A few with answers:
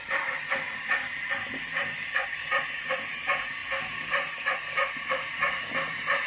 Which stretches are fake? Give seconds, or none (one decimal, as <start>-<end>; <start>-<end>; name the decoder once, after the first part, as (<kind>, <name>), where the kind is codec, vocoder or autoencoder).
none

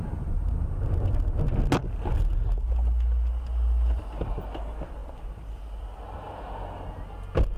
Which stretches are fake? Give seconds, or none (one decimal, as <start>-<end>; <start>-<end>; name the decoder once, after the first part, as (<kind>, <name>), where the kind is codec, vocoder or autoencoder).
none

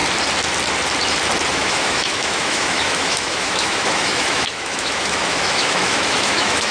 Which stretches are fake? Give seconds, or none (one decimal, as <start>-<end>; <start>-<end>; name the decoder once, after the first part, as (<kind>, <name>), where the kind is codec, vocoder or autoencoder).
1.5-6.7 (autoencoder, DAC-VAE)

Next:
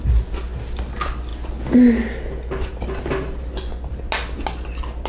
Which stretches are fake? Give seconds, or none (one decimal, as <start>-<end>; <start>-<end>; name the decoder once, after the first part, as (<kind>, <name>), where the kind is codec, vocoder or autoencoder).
none

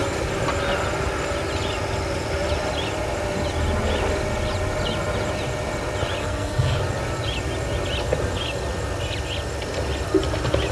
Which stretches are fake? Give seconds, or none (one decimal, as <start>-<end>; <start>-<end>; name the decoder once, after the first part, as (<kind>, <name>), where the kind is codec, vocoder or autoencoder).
6.2-6.8 (codec, SNAC)